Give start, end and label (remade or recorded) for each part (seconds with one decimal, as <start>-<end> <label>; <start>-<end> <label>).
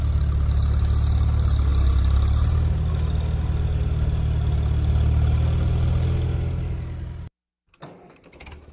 0.0-8.7 recorded